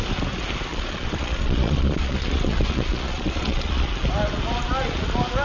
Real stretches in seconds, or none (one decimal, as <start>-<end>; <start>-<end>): 0.0-0.7; 3.9-5.4